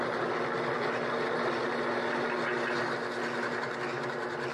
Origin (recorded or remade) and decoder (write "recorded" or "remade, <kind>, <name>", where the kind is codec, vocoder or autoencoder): recorded